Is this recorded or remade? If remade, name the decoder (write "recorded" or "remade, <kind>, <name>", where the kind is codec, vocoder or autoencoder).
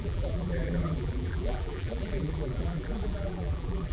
remade, vocoder, BigVGAN v2